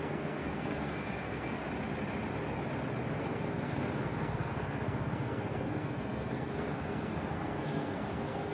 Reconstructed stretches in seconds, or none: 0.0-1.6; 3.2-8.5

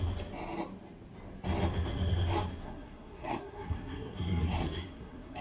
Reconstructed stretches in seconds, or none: 2.6-5.4